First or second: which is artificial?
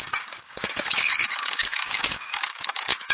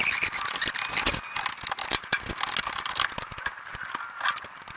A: first